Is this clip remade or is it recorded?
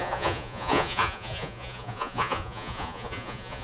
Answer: remade